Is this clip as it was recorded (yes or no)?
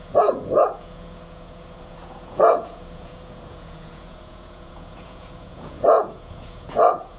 no